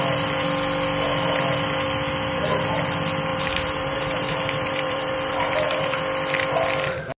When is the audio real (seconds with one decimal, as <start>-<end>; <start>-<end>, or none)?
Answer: 0.0-3.3; 6.0-7.2